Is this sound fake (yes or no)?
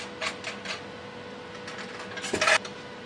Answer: no